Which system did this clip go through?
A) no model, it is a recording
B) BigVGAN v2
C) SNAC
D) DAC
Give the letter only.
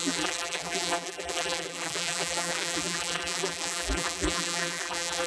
B